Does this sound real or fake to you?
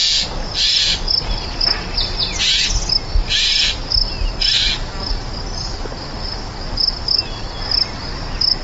real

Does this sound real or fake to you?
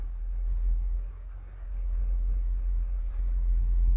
fake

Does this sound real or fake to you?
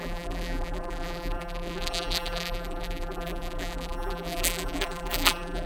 fake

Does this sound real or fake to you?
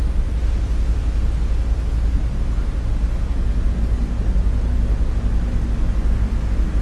real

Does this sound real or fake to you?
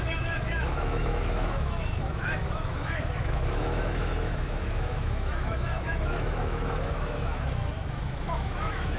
fake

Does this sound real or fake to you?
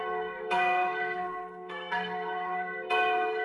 fake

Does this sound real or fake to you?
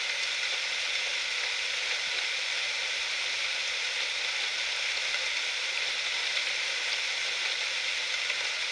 real